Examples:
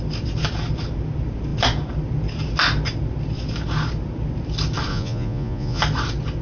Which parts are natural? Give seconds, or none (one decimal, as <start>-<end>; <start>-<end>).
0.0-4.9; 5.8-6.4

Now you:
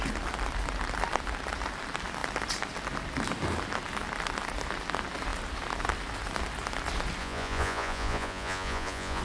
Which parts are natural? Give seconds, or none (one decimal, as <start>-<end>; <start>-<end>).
0.0-7.2

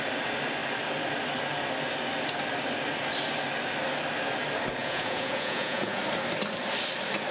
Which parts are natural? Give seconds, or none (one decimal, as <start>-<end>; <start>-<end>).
0.0-4.8; 6.0-7.3